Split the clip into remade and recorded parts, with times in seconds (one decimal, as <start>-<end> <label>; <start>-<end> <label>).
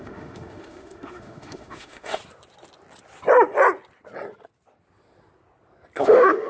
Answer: 0.0-2.2 remade; 2.2-6.0 recorded; 6.0-6.5 remade